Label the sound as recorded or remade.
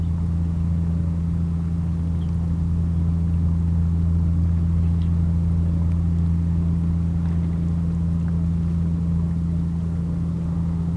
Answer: recorded